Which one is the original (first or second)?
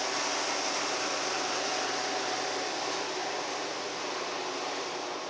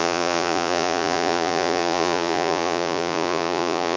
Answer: first